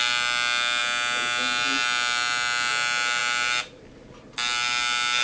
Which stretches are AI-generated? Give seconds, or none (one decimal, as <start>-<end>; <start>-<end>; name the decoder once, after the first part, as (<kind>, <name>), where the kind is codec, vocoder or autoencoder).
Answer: none